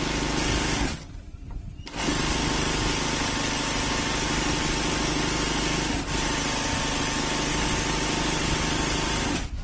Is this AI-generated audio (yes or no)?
no